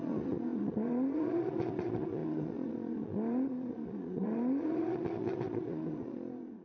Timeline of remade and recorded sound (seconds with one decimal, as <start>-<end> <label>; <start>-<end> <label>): 0.0-6.6 remade